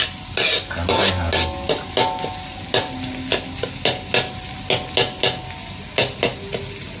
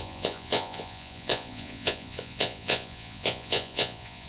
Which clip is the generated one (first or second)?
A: second